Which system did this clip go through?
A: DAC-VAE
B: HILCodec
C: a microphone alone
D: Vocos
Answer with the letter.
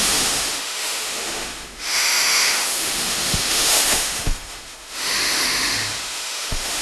A